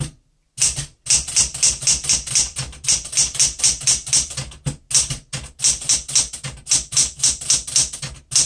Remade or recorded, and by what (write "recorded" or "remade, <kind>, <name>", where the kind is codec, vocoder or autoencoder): recorded